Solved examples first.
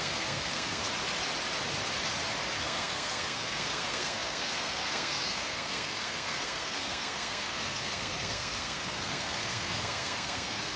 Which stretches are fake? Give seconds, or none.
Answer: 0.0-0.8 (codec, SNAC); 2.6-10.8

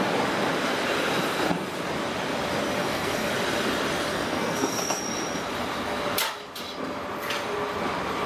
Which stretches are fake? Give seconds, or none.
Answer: 2.8-3.3 (codec, SNAC); 4.1-5.0

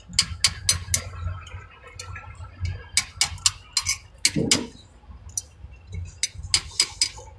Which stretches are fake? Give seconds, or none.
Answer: none

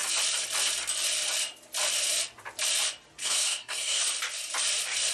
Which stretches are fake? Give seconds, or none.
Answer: 3.2-4.0 (codec, SNAC)